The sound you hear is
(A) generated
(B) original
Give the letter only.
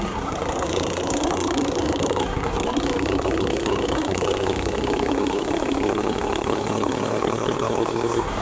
A